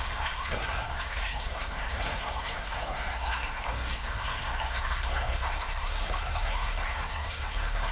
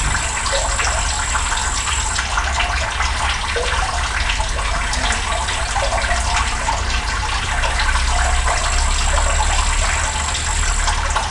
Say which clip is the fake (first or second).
first